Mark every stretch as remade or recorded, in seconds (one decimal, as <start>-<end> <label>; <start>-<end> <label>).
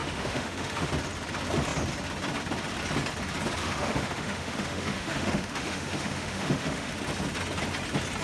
0.0-0.9 remade; 0.9-3.6 recorded; 3.6-6.9 remade; 6.9-8.2 recorded